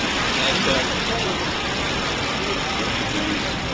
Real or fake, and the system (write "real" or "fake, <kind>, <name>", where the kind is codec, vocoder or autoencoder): fake, vocoder, BigVGAN v2